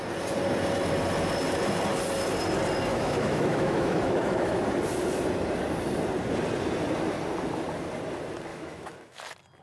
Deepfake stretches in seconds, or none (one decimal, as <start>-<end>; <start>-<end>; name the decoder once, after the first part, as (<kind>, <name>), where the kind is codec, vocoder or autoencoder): 2.9-4.6 (autoencoder, DAC-VAE); 8.5-9.2